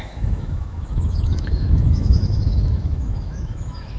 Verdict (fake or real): fake